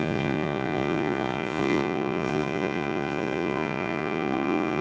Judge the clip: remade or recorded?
remade